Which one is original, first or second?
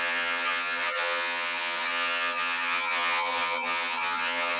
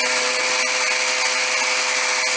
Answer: second